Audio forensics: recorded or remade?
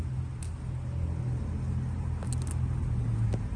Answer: recorded